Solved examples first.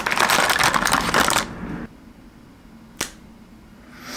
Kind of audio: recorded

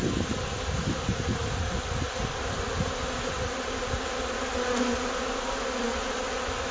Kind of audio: recorded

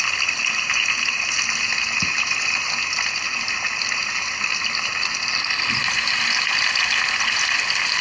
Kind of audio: recorded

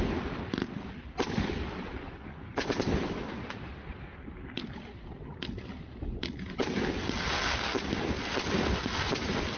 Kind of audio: recorded